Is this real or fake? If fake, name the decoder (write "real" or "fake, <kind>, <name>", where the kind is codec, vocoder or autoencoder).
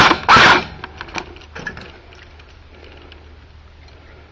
real